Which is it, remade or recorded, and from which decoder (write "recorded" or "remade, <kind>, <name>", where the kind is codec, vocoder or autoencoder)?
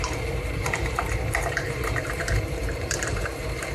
remade, vocoder, BigVGAN v2